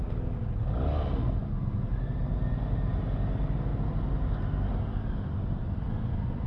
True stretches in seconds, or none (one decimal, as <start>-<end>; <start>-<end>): 0.0-6.5